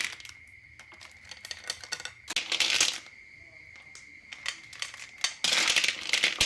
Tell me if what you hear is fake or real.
real